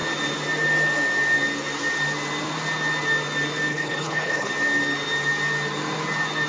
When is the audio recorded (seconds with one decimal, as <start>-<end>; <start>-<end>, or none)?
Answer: 0.0-3.7; 4.5-6.5

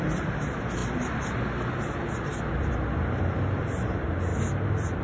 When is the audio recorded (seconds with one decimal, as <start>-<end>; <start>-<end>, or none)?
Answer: 0.0-5.0

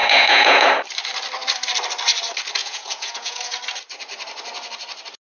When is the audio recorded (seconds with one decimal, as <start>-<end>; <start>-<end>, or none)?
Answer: 0.7-2.6; 3.6-5.3